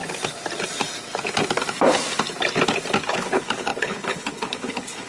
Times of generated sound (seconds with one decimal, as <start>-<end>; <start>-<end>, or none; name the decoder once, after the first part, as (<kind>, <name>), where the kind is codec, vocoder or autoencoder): 3.1-5.1 (codec, HILCodec)